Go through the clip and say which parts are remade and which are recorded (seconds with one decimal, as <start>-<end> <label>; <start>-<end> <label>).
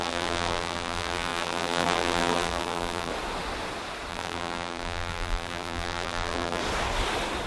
0.0-3.1 remade; 3.1-4.1 recorded; 4.1-6.6 remade; 6.6-7.5 recorded